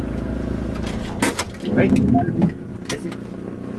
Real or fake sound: real